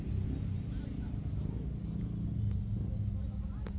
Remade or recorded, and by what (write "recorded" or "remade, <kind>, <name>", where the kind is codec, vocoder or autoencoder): recorded